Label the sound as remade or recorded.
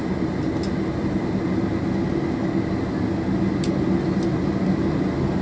recorded